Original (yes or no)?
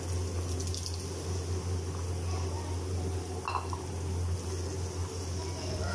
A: yes